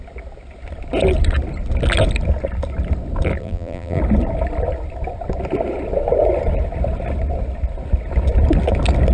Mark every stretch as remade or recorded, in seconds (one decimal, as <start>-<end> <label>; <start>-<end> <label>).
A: 0.0-3.4 recorded; 3.4-4.0 remade; 4.0-9.1 recorded